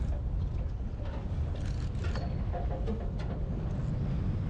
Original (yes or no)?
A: yes